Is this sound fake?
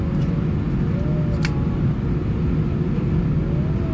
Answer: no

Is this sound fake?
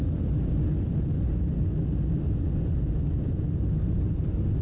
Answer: no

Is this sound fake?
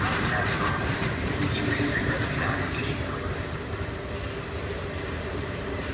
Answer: yes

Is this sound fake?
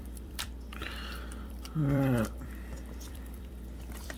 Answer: yes